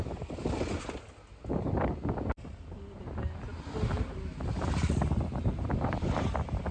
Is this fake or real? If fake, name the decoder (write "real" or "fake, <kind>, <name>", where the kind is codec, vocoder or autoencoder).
real